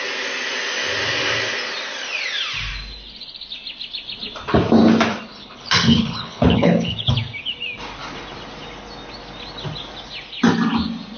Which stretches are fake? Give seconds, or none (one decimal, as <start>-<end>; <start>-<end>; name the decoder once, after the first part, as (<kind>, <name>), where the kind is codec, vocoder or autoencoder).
5.3-7.1 (codec, HILCodec)